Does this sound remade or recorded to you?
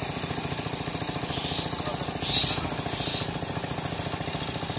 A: recorded